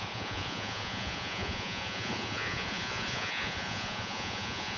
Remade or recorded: remade